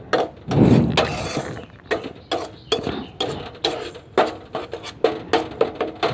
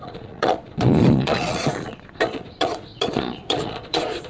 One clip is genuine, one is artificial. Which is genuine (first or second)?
first